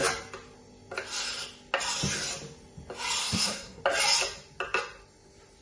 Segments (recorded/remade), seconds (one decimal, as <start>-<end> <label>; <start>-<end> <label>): 0.0-3.2 recorded; 3.2-3.8 remade; 3.8-5.6 recorded